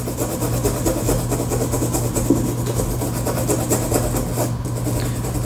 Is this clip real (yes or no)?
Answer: yes